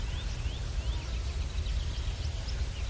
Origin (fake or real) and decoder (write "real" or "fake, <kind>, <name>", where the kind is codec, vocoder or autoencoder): real